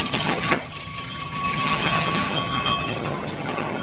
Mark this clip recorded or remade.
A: remade